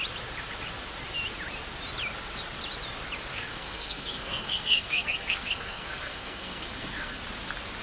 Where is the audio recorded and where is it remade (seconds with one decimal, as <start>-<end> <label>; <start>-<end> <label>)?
0.0-3.3 recorded; 3.3-7.2 remade; 7.2-7.8 recorded